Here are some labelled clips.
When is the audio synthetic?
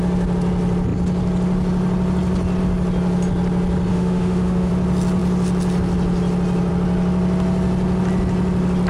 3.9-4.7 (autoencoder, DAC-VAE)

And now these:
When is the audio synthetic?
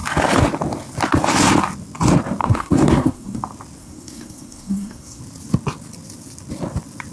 2.4-3.4 (codec, SNAC); 3.8-5.2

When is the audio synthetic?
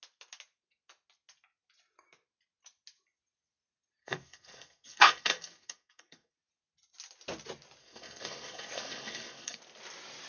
4.0-6.3 (codec, SNAC); 7.8-9.6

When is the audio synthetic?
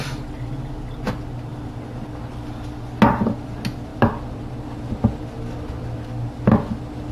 none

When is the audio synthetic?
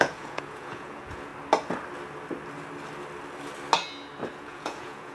0.0-1.3 (vocoder, Vocos); 4.4-5.1